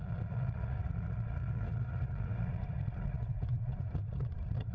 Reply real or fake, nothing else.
fake